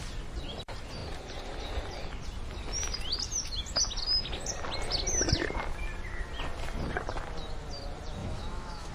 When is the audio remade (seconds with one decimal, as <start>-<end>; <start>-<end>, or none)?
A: 8.2-8.9